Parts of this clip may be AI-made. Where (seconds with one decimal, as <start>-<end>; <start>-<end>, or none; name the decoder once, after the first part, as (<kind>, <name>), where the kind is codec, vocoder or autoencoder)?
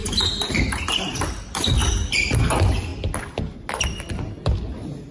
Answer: 0.0-1.2 (vocoder, BigVGAN v2); 1.8-2.4